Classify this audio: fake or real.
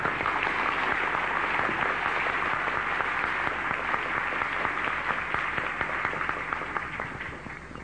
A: real